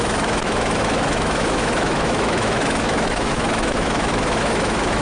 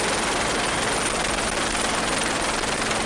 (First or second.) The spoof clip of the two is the first